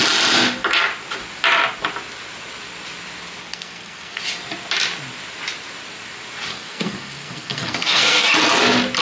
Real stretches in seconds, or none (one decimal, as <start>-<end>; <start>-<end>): 0.0-3.4; 4.2-6.5; 8.3-9.0